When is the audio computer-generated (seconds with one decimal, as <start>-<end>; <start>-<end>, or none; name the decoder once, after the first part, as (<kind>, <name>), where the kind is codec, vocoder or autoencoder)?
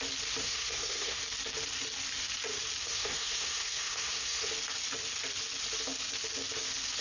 0.4-1.2 (codec, SNAC); 2.8-4.5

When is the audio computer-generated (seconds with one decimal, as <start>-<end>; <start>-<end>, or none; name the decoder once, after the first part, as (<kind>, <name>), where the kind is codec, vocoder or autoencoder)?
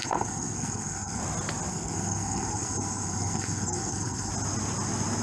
0.0-1.2 (codec, SNAC); 1.7-4.3